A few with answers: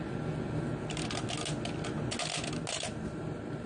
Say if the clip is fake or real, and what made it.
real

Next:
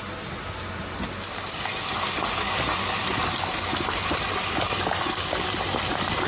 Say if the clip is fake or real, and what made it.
real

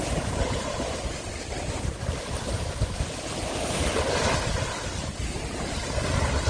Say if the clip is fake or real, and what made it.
real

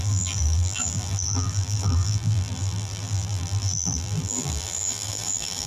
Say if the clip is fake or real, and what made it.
fake, vocoder, BigVGAN v2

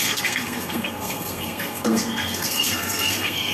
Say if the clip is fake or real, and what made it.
fake, codec, SNAC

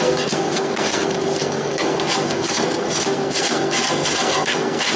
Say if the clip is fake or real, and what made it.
fake, codec, SNAC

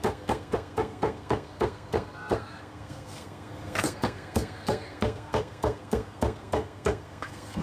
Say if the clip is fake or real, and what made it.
fake, codec, SNAC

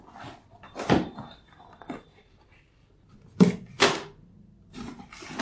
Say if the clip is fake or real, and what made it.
fake, vocoder, BigVGAN v2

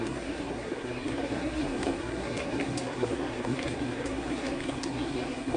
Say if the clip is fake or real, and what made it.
fake, codec, SNAC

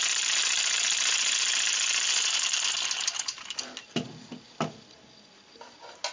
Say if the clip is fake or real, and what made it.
real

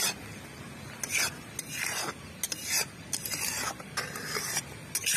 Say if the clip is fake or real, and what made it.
real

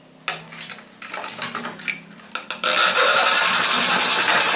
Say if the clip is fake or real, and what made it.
real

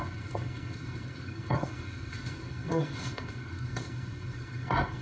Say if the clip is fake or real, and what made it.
fake, codec, SNAC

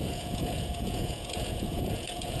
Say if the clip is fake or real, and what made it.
fake, vocoder, Vocos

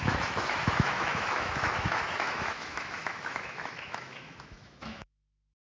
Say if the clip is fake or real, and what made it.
fake, autoencoder, DAC-VAE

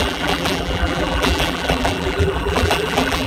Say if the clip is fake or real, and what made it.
fake, vocoder, BigVGAN v2